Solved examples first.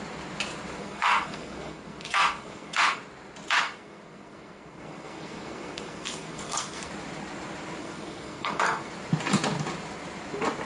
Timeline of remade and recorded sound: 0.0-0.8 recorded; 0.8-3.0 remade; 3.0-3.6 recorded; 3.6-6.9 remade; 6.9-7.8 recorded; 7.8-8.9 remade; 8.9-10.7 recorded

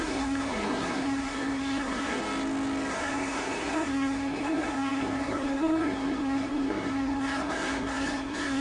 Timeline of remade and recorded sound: 0.0-2.2 remade; 2.2-2.9 recorded; 2.9-8.6 remade

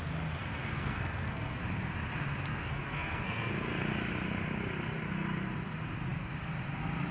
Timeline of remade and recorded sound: 0.0-0.4 recorded; 0.4-1.6 remade; 1.6-2.5 recorded; 2.5-3.5 remade; 3.5-7.1 recorded

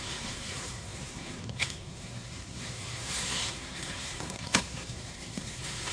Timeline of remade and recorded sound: 0.0-5.9 remade

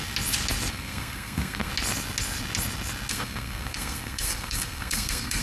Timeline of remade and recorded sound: 0.0-0.7 recorded; 0.7-1.7 remade; 1.7-3.1 recorded; 3.1-5.4 remade

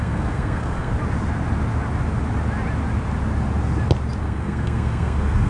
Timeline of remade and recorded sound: 0.0-0.9 remade; 0.9-4.2 recorded; 4.2-5.5 remade

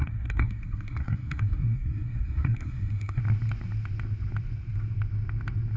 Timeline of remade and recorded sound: 0.0-3.2 remade; 3.2-5.8 recorded

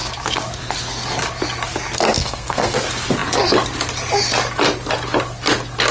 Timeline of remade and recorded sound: 0.0-2.2 recorded; 2.2-2.8 remade; 2.8-5.9 recorded